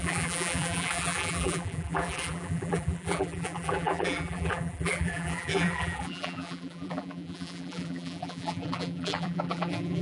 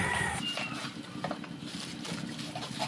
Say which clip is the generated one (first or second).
first